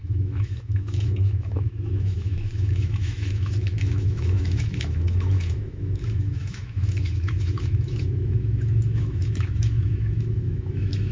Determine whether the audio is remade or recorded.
remade